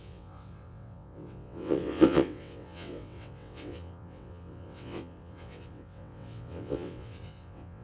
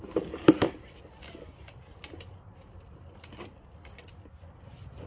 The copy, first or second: first